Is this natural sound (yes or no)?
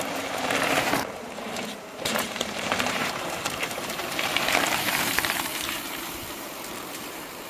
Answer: no